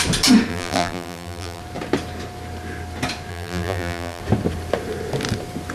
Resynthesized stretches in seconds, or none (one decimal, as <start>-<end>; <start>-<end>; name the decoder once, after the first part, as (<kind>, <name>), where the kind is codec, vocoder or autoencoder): 0.5-1.6 (vocoder, BigVGAN v2); 3.3-4.2